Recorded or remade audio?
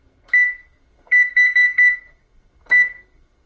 remade